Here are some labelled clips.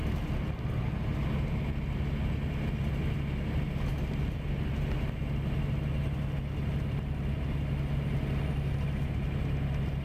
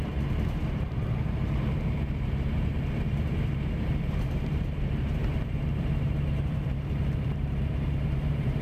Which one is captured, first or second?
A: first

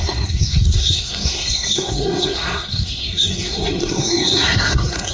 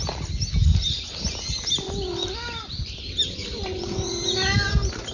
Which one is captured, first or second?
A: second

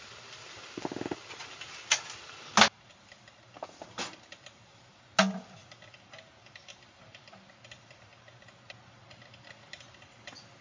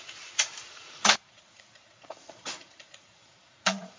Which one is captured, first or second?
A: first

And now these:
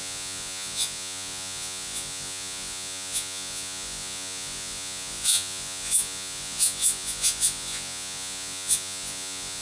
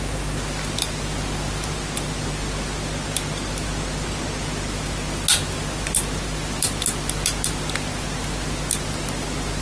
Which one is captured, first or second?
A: second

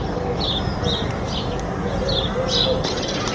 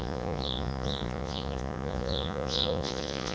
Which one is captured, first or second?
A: first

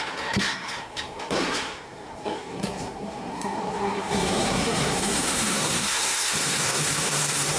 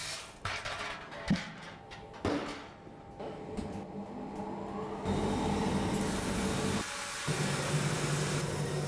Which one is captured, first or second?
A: second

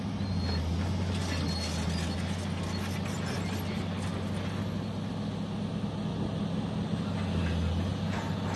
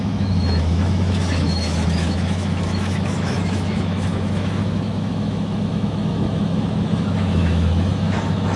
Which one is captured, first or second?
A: first